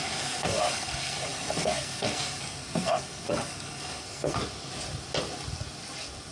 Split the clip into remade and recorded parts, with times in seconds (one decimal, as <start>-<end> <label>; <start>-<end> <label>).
0.0-4.4 remade; 4.4-6.3 recorded